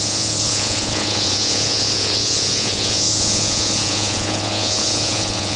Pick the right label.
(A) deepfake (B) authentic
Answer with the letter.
A